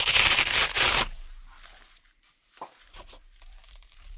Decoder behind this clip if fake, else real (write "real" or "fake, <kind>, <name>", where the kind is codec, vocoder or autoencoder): fake, vocoder, BigVGAN v2